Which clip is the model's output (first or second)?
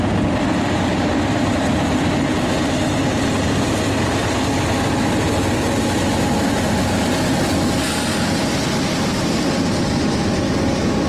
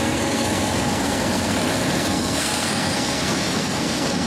second